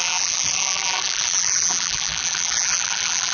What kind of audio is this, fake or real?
fake